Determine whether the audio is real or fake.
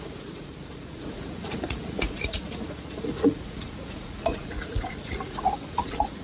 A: fake